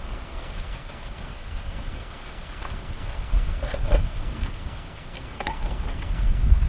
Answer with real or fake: fake